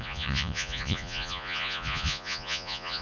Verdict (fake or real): fake